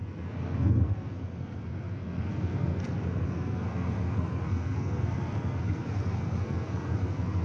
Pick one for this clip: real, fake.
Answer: fake